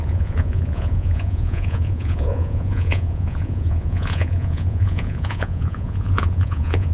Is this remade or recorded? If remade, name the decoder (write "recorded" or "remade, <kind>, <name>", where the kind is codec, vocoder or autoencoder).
remade, vocoder, Vocos